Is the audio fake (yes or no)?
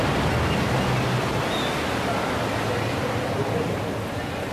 no